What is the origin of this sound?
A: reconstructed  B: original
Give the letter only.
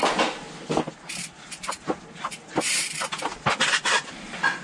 B